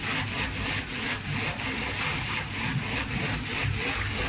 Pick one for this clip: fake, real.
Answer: real